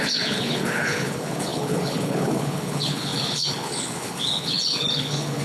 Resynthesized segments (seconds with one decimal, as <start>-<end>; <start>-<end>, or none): 0.0-5.4